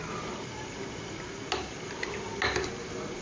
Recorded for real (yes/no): yes